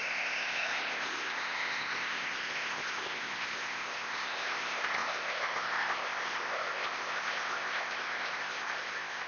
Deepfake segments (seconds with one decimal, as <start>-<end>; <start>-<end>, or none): 0.0-9.3